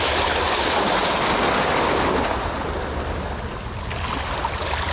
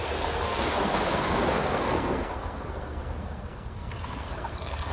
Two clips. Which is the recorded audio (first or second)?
first